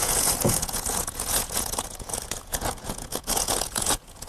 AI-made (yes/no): yes